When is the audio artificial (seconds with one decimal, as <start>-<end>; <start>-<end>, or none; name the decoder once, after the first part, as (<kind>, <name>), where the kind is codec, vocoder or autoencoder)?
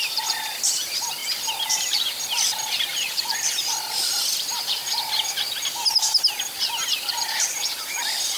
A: none